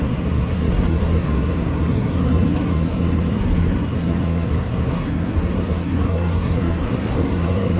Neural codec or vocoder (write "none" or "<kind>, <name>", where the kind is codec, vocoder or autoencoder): codec, SNAC